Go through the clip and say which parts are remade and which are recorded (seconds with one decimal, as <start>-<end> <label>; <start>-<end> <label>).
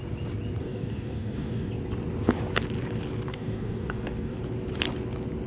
0.0-0.6 recorded; 0.6-1.7 remade; 1.7-3.3 recorded; 3.3-4.4 remade; 4.4-5.5 recorded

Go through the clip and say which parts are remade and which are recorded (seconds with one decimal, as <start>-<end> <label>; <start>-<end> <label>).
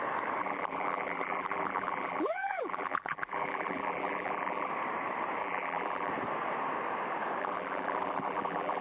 0.0-0.4 recorded; 0.4-4.7 remade; 4.7-5.4 recorded; 5.4-6.1 remade; 6.1-7.4 recorded; 7.4-8.8 remade